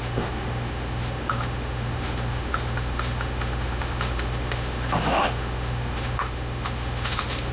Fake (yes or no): yes